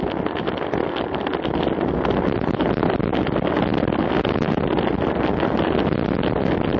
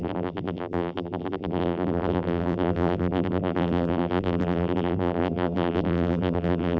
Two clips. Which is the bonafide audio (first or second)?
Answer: first